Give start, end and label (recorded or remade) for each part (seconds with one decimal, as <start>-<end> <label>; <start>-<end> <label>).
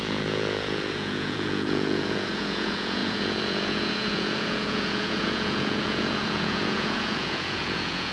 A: 0.0-8.1 remade